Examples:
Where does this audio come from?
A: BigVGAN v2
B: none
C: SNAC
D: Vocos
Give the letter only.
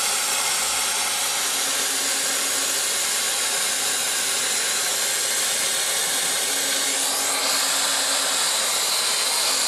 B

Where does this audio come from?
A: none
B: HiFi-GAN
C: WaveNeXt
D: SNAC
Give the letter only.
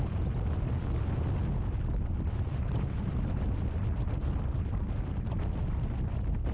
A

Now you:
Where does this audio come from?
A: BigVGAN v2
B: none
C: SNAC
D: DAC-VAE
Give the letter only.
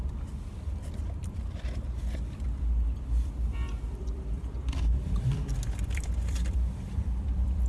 A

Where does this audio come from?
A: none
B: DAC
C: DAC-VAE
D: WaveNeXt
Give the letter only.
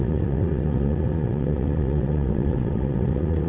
D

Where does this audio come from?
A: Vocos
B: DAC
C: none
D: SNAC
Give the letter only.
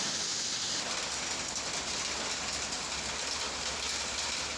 C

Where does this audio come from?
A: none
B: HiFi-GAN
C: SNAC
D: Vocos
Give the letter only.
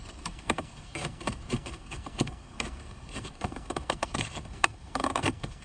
C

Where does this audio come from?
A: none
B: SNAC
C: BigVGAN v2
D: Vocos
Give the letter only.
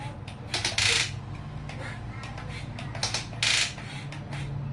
A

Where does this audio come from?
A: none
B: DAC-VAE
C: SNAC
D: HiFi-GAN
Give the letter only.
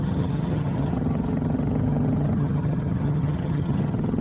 D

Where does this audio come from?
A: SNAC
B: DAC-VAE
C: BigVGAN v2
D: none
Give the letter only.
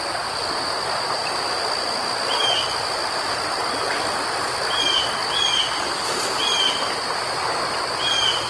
D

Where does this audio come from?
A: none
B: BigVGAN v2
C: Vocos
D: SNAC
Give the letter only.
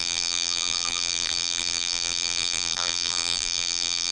B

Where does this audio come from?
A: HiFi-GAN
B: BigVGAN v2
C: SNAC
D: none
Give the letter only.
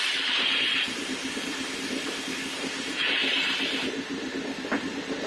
B